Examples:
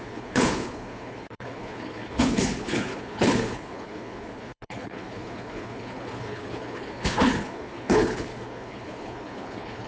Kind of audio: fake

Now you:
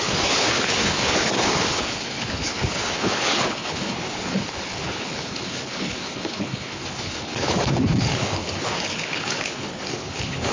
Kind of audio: fake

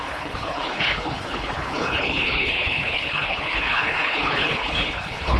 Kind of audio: fake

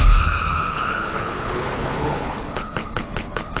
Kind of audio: fake